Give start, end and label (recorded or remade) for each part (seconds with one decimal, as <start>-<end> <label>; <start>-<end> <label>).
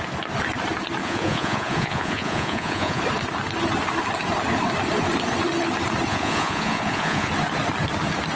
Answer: 0.0-1.0 recorded; 1.0-3.0 remade; 3.0-6.1 recorded; 6.1-7.3 remade; 7.3-8.4 recorded